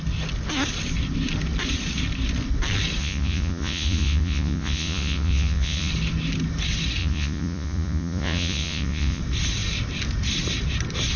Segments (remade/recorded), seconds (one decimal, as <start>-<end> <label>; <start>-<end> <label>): 0.0-3.0 recorded; 3.0-5.9 remade; 5.9-7.0 recorded; 7.0-9.2 remade; 9.2-11.2 recorded